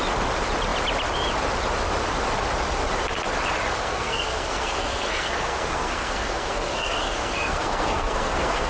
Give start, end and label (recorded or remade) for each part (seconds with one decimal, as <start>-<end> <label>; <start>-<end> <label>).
0.0-3.8 recorded; 3.8-8.7 remade